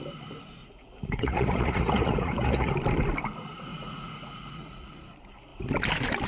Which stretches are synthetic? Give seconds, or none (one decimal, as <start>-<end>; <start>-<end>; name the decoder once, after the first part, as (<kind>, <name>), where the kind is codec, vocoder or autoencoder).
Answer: 0.6-2.7 (vocoder, Vocos); 3.7-4.9